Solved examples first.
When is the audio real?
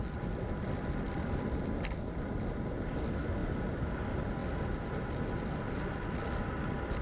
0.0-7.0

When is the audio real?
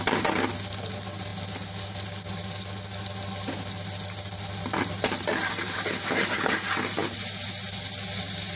0.0-8.6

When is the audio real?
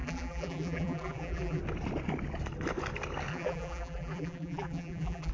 1.6-3.3